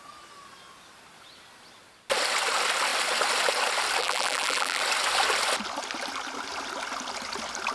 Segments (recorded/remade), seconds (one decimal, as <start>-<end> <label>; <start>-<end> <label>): 0.0-4.0 recorded; 4.0-4.8 remade; 4.8-7.7 recorded